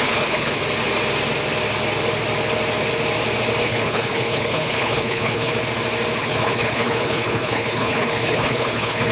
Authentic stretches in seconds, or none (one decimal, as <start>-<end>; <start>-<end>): 0.6-3.6; 5.5-6.2